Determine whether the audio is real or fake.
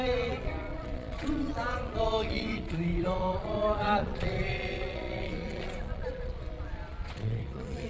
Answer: fake